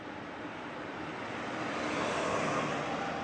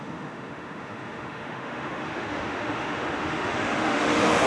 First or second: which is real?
first